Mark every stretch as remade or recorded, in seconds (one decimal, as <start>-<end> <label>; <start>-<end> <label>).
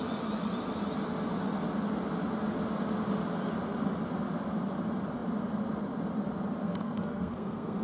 0.0-6.6 recorded; 6.6-7.8 remade